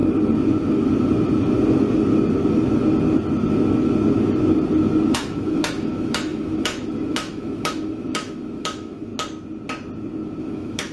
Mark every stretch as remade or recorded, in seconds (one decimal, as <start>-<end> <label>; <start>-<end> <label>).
0.0-5.1 recorded; 5.1-9.1 remade; 9.1-10.4 recorded; 10.4-10.9 remade